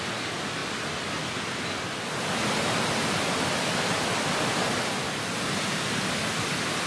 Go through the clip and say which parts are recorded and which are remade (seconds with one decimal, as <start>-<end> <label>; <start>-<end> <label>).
0.0-6.9 recorded